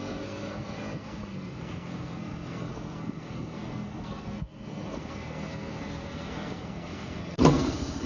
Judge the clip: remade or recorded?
remade